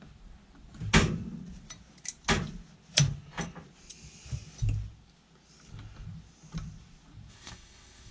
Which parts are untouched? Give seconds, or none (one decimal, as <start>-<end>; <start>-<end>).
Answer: 0.0-7.3